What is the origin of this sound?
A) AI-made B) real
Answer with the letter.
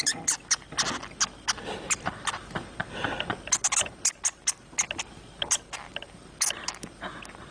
B